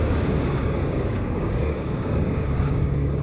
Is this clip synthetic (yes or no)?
yes